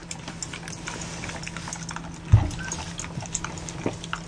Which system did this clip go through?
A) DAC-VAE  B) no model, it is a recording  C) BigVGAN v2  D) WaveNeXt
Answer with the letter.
B